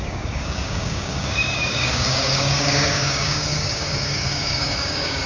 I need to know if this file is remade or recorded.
remade